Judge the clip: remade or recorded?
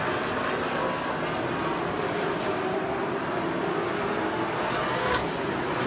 recorded